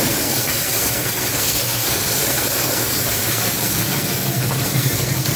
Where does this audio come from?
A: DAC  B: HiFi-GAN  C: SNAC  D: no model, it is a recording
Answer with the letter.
C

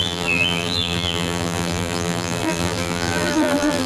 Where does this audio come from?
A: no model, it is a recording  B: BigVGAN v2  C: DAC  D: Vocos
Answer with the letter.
B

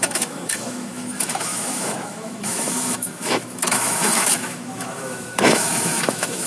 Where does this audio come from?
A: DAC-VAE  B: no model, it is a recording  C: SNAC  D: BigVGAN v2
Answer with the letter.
A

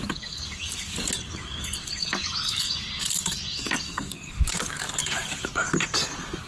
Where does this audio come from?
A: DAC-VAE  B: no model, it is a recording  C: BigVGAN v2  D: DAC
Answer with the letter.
D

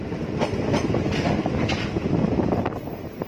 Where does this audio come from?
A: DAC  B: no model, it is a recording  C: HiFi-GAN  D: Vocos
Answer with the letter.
B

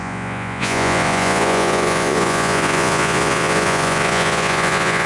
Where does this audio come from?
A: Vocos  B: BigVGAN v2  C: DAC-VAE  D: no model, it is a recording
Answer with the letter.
A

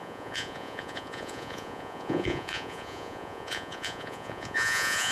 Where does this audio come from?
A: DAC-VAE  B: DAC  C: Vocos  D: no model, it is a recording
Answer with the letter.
C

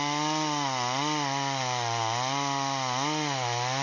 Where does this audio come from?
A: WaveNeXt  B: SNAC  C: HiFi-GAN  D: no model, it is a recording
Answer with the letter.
D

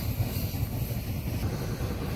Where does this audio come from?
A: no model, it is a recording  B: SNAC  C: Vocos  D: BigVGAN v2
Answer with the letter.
A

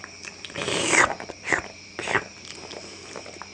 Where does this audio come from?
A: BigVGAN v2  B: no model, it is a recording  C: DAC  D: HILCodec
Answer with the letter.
A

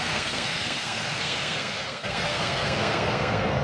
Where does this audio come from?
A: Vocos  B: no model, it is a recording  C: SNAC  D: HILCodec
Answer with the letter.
C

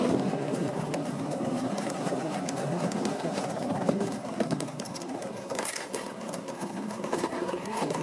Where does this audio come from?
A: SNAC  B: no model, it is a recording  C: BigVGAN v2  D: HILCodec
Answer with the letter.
A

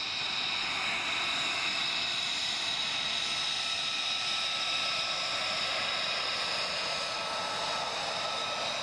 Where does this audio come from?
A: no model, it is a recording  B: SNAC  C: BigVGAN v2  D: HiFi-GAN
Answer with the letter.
A